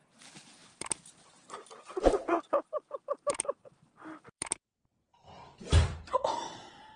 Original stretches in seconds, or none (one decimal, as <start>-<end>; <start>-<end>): 0.0-0.6; 4.8-7.0

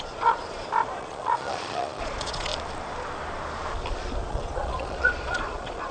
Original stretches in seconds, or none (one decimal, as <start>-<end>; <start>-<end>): 0.4-1.0; 2.5-4.3

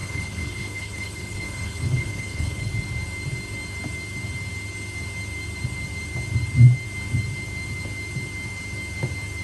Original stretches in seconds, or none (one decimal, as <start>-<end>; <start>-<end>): 2.7-9.4

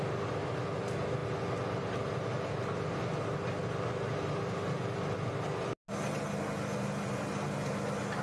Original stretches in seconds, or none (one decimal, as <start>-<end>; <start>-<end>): 0.0-8.2

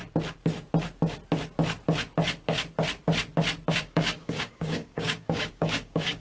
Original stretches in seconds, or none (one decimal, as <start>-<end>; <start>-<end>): 0.0-3.7

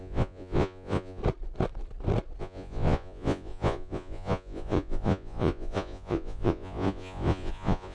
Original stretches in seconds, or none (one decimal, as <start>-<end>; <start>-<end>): 1.2-2.4